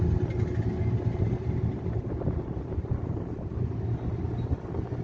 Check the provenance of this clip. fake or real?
real